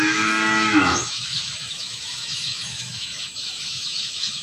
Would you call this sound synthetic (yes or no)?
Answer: yes